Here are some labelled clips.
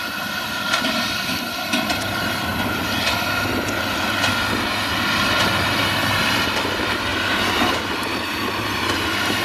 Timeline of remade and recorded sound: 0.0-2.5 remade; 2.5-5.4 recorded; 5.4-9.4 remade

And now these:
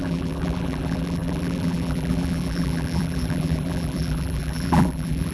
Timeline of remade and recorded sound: 0.0-5.3 remade